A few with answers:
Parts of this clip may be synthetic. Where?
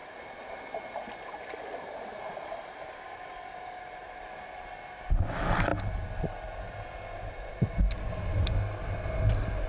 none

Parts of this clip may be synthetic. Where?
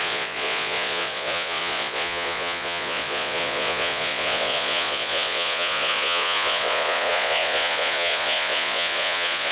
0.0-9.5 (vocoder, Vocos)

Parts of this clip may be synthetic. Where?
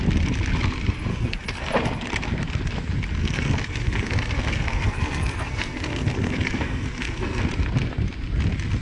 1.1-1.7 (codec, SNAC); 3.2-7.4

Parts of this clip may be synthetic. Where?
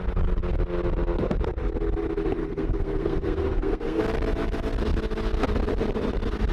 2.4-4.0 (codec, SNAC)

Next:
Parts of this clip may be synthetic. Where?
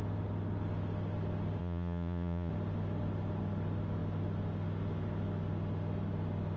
1.6-2.5 (vocoder, Vocos)